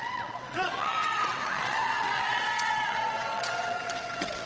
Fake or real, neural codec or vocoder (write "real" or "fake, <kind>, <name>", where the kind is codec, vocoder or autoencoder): fake, vocoder, WaveNeXt